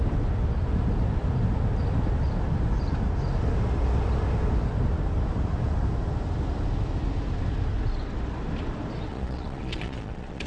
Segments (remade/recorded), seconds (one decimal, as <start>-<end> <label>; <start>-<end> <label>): 0.0-9.1 recorded; 9.1-10.5 remade